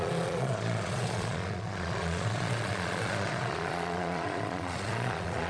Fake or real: fake